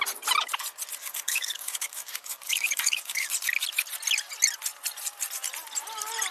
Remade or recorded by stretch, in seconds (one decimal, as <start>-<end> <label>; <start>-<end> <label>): 0.0-1.0 recorded; 1.0-3.3 remade; 3.3-6.3 recorded